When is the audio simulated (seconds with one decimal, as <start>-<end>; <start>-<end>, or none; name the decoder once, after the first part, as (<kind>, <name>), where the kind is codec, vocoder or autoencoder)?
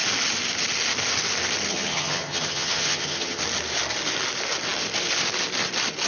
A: 1.7-3.4 (vocoder, HiFi-GAN)